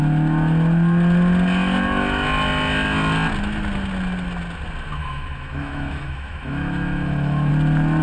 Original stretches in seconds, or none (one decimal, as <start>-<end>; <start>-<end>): 0.0-5.0; 7.5-8.0